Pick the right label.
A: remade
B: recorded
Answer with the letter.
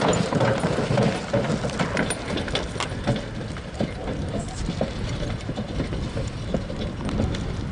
B